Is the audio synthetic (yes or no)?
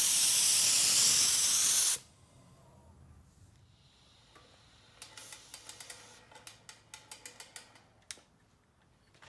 no